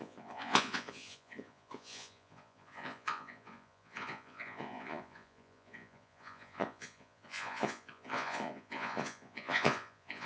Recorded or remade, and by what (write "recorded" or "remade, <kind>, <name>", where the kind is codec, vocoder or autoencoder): remade, vocoder, Vocos